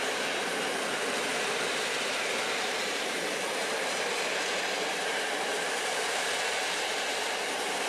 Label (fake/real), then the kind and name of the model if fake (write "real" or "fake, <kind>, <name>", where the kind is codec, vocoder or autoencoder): fake, vocoder, BigVGAN v2